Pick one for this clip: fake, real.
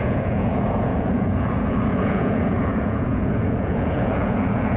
fake